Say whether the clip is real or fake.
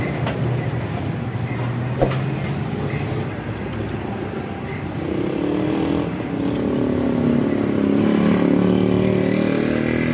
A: real